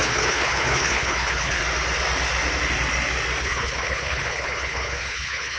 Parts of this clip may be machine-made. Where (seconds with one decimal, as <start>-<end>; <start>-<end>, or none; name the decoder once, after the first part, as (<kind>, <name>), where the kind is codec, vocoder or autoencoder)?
0.0-1.6 (codec, HILCodec); 3.4-5.6